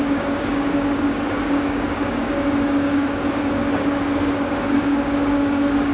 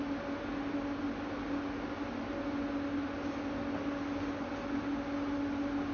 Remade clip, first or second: first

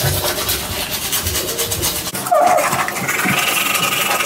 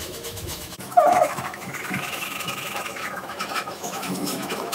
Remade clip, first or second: second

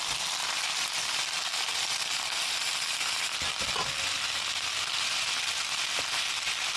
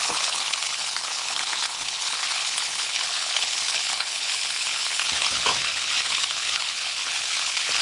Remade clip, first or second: second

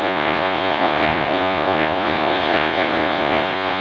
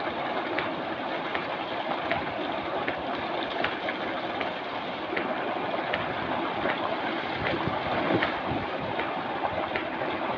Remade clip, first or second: first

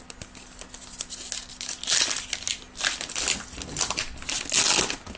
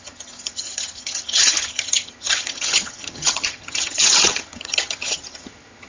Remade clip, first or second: second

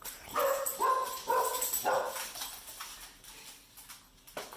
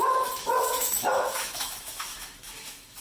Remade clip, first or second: second